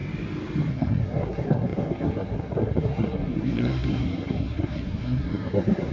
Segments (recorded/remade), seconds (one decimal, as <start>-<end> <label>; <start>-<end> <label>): 0.0-0.7 recorded; 0.7-5.9 remade